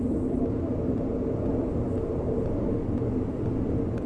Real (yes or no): yes